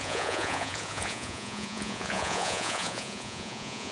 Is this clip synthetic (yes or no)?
yes